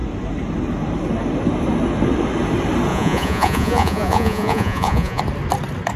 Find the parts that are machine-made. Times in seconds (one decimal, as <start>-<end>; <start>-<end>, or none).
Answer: 2.9-5.2